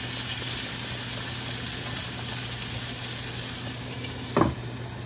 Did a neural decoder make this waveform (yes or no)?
no